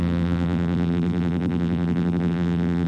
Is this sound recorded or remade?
remade